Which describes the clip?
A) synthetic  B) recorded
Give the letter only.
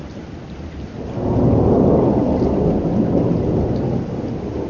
B